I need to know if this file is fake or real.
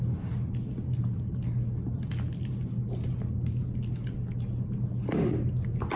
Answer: real